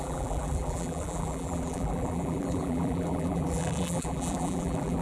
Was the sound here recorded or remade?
remade